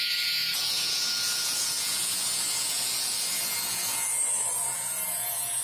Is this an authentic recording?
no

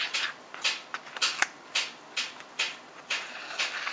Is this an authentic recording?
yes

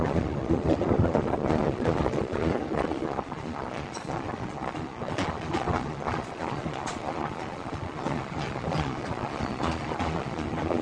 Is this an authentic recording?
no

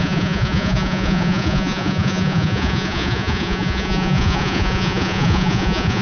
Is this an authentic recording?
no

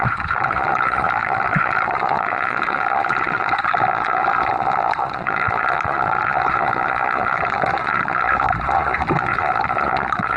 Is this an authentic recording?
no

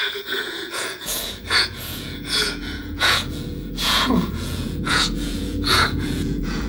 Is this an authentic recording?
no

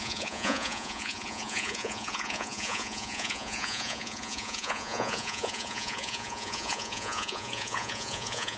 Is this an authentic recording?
no